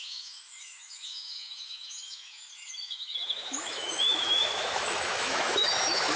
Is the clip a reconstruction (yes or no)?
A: yes